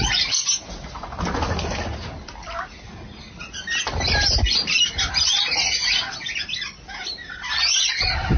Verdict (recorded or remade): recorded